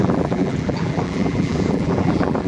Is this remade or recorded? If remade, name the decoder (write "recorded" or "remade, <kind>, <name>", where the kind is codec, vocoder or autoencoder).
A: remade, vocoder, BigVGAN v2